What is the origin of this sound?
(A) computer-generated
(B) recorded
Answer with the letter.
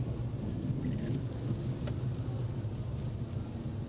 B